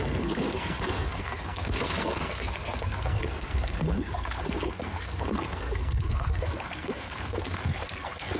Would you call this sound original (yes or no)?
no